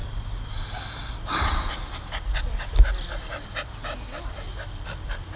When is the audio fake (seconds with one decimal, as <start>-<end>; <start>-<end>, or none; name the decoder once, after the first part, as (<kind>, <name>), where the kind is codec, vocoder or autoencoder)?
none